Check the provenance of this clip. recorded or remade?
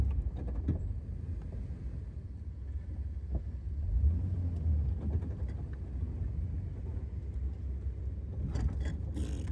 recorded